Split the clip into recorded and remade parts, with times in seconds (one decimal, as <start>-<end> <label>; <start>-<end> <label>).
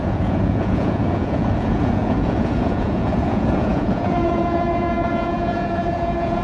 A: 0.0-6.4 remade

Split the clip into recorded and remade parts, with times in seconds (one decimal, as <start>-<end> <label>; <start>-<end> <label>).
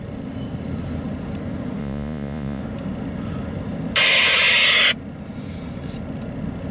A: 0.0-1.8 recorded; 1.8-2.6 remade; 2.6-6.7 recorded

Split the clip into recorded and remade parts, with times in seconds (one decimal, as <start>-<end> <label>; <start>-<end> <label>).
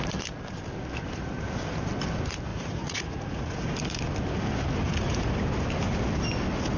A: 0.0-2.5 recorded; 2.5-3.7 remade; 3.7-4.8 recorded; 4.8-5.4 remade; 5.4-6.8 recorded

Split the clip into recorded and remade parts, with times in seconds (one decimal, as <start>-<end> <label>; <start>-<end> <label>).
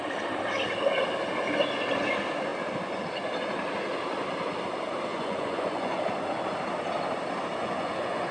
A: 0.0-5.1 recorded; 5.1-6.0 remade; 6.0-7.6 recorded; 7.6-8.3 remade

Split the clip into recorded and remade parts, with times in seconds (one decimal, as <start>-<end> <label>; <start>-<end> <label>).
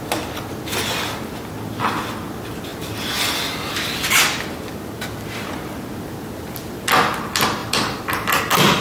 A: 0.0-8.8 recorded